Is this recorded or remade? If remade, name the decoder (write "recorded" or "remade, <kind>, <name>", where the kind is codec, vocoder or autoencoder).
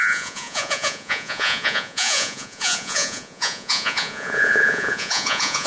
remade, vocoder, Vocos